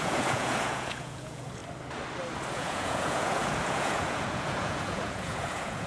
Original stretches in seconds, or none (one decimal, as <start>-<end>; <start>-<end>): 1.6-2.5

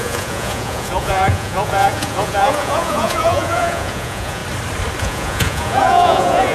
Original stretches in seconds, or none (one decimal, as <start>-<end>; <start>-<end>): 4.4-5.0

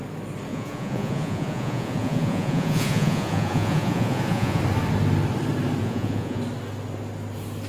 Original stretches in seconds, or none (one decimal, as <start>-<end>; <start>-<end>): 0.0-0.5; 4.6-5.8; 6.4-7.7

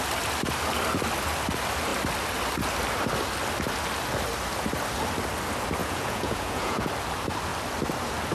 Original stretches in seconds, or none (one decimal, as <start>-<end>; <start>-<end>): 0.0-5.8; 6.9-8.3

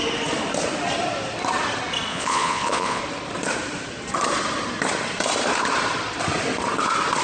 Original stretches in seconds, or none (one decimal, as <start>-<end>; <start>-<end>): 0.0-2.1; 3.0-7.2

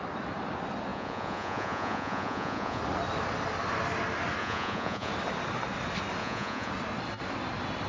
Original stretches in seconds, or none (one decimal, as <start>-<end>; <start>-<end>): 0.0-0.9; 2.8-4.4; 5.1-6.2; 6.7-7.9

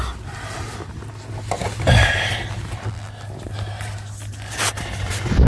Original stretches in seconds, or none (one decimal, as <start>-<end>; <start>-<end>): 0.0-5.5

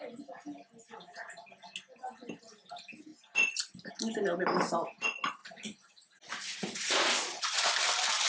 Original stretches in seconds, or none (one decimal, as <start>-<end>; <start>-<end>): 0.0-6.5; 7.7-8.3